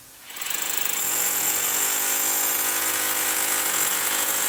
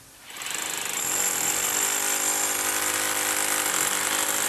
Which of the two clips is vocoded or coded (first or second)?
first